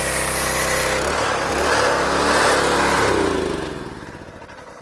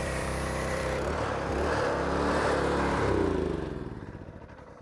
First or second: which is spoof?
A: second